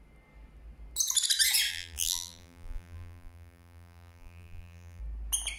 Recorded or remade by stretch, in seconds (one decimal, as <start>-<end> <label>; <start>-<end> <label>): 0.0-1.7 recorded; 1.7-5.0 remade; 5.0-5.6 recorded

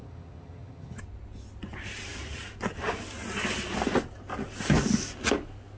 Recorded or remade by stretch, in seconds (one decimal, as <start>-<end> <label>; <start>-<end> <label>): 0.0-1.0 remade; 1.0-5.8 recorded

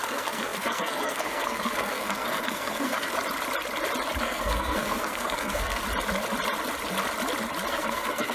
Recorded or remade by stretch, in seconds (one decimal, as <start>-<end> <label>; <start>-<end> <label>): 0.0-3.1 remade; 3.1-4.2 recorded; 4.2-5.8 remade; 5.8-7.7 recorded; 7.7-8.3 remade

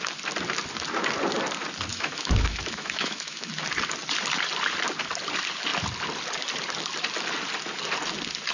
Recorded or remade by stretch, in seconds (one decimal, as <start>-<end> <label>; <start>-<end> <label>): 0.0-1.9 recorded; 1.9-3.5 remade; 3.5-8.5 recorded

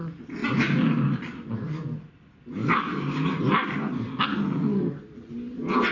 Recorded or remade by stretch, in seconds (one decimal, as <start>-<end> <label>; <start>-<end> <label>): 0.0-2.6 recorded; 2.6-3.5 remade; 3.5-5.9 recorded

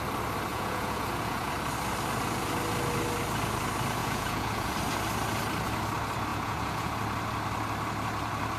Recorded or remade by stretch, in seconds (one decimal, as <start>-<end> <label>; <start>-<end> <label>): 0.0-0.5 recorded; 0.5-1.5 remade; 1.5-4.0 recorded; 4.0-4.7 remade; 4.7-6.3 recorded; 6.3-6.9 remade; 6.9-8.6 recorded

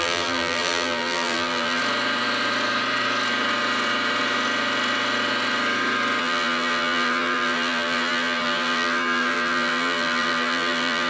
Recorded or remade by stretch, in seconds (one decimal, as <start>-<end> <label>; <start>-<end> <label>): 0.0-1.8 remade; 1.8-6.2 recorded; 6.2-11.1 remade